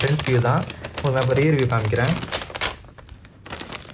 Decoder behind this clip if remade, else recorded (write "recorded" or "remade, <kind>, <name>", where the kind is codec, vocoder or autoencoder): recorded